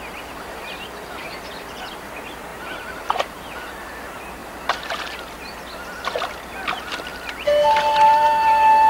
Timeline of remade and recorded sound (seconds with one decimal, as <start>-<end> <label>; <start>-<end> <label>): 0.0-2.5 recorded; 2.5-3.6 remade; 3.6-8.9 recorded

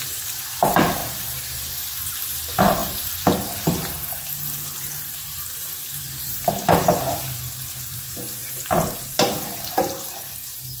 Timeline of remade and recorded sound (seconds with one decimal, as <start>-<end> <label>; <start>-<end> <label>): 0.0-10.8 remade

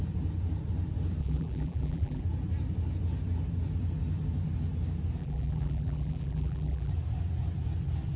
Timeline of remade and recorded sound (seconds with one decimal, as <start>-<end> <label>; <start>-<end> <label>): 0.0-1.2 recorded; 1.2-2.2 remade; 2.2-5.2 recorded; 5.2-6.9 remade; 6.9-8.2 recorded

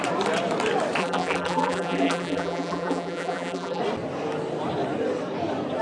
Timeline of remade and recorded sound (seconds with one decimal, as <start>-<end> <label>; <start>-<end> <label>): 0.0-1.0 recorded; 1.0-3.8 remade; 3.8-5.8 recorded

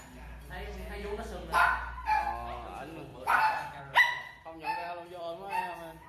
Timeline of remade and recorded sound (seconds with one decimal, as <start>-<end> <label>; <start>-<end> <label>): 0.0-3.1 recorded; 3.1-3.8 remade; 3.8-4.8 recorded; 4.8-6.1 remade